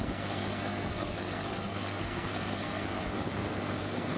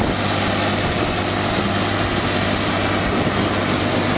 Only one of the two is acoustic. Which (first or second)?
second